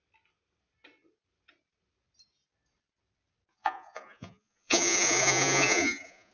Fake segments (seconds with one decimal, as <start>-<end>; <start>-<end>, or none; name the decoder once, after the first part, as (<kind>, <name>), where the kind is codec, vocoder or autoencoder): 3.5-6.3 (vocoder, Vocos)